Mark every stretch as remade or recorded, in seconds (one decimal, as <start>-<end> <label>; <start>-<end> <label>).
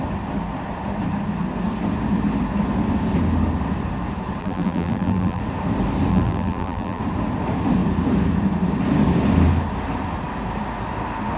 0.0-4.4 recorded; 4.4-5.4 remade; 5.4-6.1 recorded; 6.1-7.0 remade; 7.0-11.4 recorded